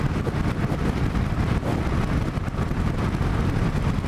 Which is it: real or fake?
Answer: real